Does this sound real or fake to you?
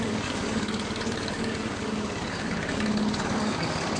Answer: fake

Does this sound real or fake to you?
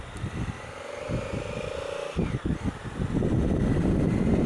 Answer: real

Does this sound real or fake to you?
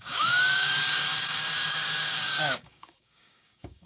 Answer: fake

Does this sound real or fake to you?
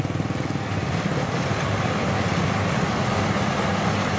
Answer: real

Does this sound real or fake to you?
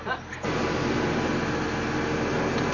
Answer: real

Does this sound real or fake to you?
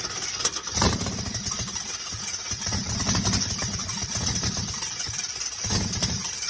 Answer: real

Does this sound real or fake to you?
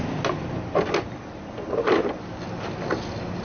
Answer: real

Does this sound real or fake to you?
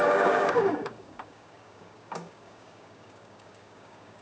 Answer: fake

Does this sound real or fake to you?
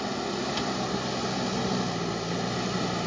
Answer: real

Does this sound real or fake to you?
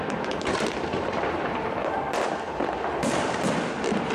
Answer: real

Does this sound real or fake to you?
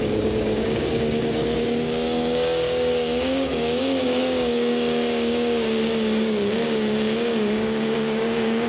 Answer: fake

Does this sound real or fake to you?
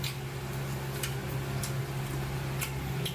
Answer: real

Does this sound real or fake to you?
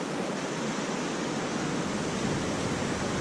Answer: real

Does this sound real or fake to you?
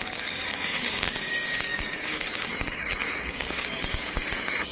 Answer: fake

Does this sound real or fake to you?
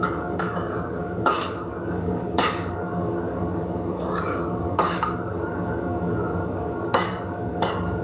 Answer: fake